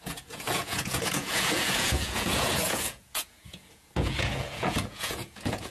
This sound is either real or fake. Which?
fake